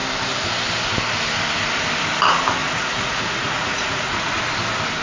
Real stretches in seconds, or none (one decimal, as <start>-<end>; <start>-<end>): 0.0-2.6; 4.4-5.0